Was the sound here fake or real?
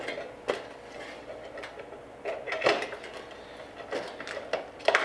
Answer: real